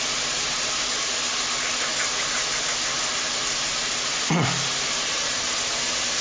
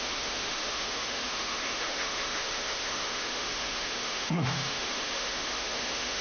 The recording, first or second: first